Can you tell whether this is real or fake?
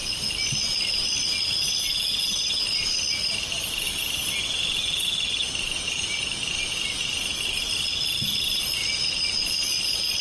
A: real